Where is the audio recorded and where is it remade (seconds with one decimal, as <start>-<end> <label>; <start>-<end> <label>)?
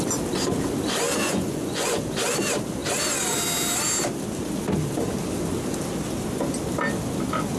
0.0-1.2 recorded; 1.2-2.0 remade; 2.0-7.6 recorded